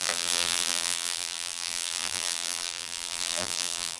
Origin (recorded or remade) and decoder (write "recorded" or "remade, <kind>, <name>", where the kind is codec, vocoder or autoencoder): remade, vocoder, BigVGAN v2